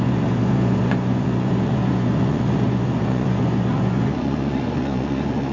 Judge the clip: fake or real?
fake